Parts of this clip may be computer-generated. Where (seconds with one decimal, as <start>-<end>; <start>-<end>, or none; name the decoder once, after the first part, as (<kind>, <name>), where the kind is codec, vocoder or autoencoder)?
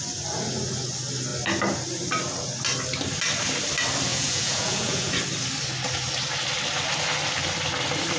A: 4.1-5.1 (vocoder, Vocos)